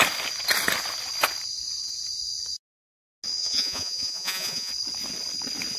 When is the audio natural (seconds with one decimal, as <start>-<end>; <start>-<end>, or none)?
0.0-3.4; 4.7-5.8